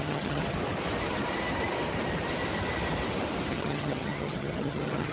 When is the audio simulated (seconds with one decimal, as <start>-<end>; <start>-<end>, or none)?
0.0-0.4; 3.5-5.1